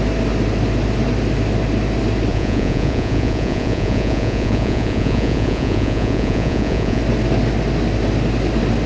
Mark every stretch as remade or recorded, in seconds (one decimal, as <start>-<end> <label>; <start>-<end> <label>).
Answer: 0.0-2.3 recorded; 2.3-7.0 remade; 7.0-8.9 recorded